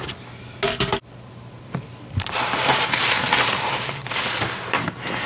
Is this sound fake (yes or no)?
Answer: no